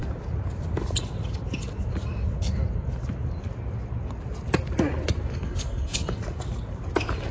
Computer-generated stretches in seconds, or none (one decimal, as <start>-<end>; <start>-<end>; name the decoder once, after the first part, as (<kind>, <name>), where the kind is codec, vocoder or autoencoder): 5.3-6.1 (codec, SNAC)